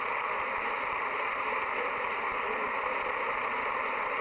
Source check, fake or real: real